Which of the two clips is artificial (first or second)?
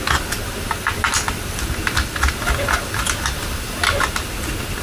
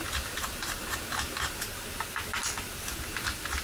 first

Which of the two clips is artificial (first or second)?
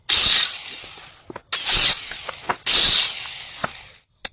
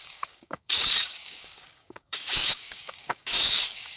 second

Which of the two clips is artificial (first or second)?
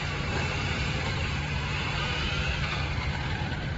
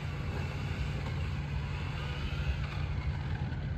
first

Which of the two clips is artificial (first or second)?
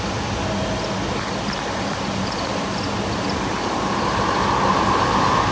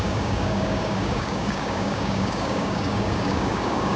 second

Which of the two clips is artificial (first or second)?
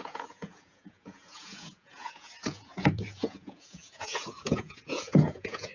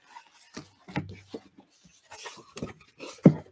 first